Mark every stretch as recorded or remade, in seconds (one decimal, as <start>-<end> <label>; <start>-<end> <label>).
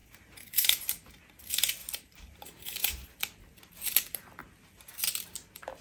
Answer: 0.0-1.1 remade; 1.1-1.8 recorded; 1.8-3.2 remade; 3.2-5.8 recorded